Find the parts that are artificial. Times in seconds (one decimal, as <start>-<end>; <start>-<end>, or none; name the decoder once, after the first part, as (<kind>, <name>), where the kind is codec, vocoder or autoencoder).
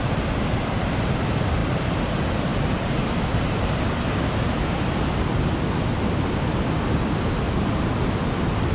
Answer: none